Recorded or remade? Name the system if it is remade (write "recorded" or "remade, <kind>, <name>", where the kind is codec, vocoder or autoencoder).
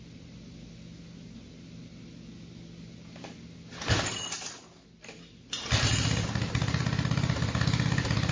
recorded